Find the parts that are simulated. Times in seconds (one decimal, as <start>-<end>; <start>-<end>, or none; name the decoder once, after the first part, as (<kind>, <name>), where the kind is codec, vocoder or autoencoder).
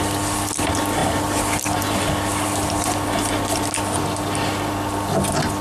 none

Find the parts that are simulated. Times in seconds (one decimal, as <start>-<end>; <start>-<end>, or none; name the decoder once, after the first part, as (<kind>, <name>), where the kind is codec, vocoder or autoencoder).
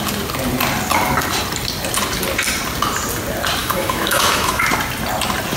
3.6-4.6 (autoencoder, DAC-VAE)